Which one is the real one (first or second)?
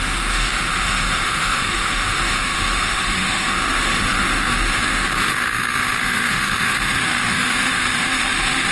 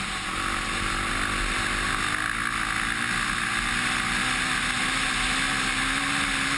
second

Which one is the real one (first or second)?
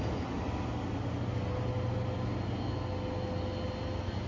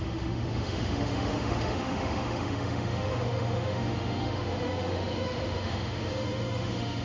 first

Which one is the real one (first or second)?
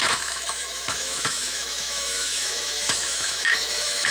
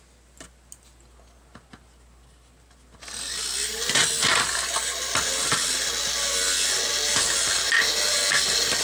second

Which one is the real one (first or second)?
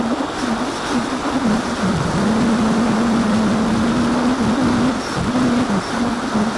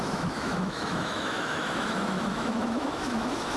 first